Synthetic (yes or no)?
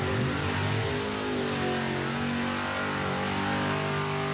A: no